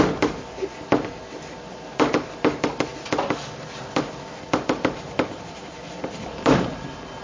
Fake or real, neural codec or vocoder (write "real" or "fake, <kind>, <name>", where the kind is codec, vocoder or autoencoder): real